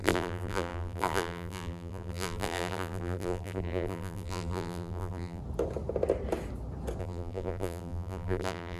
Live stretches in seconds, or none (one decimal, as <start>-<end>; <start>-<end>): 5.4-7.0